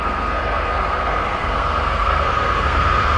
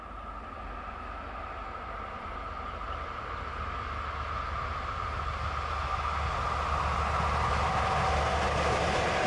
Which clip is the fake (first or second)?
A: first